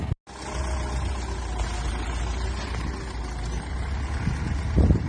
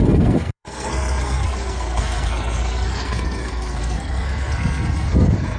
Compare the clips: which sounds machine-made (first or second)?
second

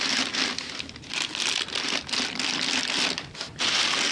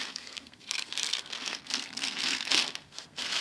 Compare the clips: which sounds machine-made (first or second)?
second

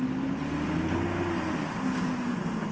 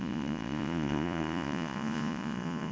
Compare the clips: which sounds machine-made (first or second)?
second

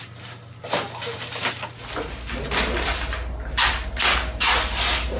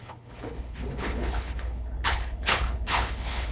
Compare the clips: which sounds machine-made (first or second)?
second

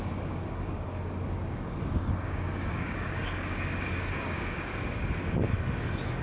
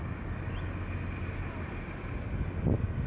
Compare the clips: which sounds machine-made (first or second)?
first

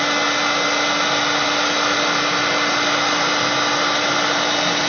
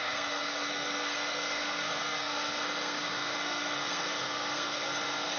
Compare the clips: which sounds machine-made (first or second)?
second